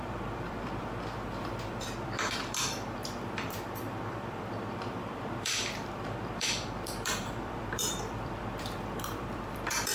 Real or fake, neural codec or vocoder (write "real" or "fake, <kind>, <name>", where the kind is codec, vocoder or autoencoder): fake, vocoder, BigVGAN v2